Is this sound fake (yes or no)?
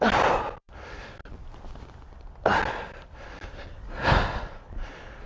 no